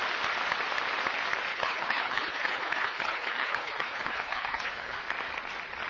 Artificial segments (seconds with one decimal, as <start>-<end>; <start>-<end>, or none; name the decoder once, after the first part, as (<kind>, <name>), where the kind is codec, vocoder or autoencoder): 1.5-5.0 (codec, HILCodec)

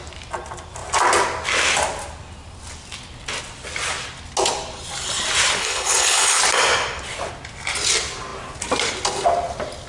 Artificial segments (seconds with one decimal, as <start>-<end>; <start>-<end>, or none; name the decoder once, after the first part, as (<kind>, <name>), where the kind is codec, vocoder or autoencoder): 5.6-6.4 (codec, HILCodec)

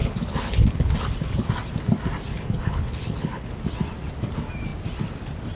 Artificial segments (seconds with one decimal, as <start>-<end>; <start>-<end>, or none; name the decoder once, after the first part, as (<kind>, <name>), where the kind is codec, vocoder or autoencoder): 0.0-1.5 (codec, HILCodec); 2.3-3.5

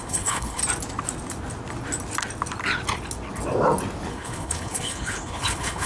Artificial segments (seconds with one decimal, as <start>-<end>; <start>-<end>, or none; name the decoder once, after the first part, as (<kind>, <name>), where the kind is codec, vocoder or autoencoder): 0.0-0.6 (codec, HILCodec); 4.1-5.9

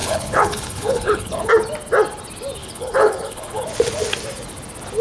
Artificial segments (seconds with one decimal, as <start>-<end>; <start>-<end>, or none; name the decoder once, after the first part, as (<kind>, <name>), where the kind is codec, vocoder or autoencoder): 0.0-1.5 (codec, HILCodec); 2.6-3.6